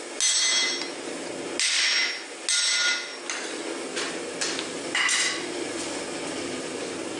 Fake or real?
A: real